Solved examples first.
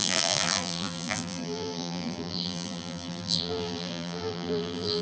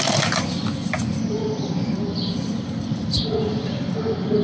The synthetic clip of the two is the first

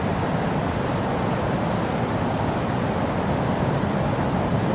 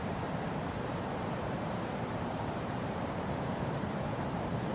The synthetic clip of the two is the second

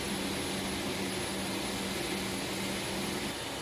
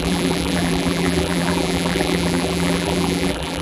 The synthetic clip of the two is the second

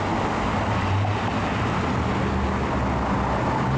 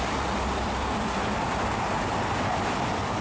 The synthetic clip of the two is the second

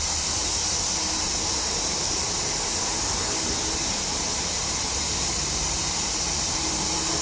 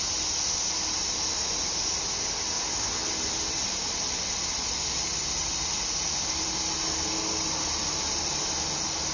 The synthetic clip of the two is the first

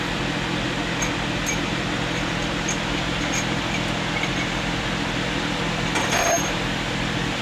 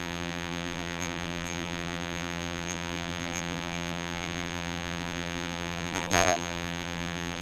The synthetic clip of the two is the second